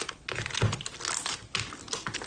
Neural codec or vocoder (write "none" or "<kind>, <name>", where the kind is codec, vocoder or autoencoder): none